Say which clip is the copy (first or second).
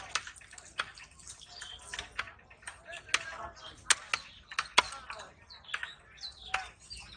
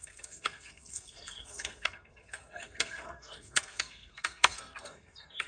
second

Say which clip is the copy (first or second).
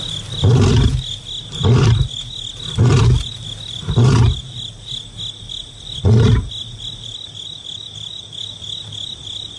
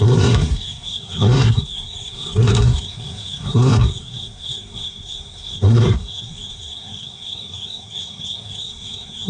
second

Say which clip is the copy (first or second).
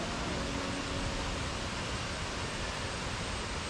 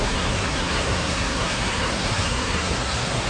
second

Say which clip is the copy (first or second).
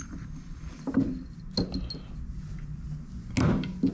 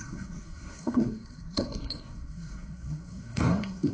second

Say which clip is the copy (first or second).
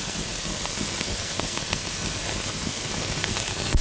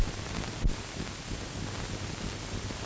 first